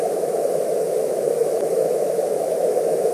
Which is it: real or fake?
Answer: fake